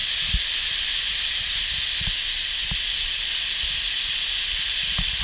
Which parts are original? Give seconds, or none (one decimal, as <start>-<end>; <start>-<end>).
0.0-5.2